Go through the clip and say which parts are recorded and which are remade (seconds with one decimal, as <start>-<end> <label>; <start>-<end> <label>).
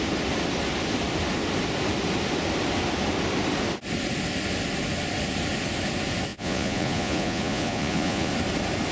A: 0.0-6.3 recorded; 6.3-8.3 remade; 8.3-8.9 recorded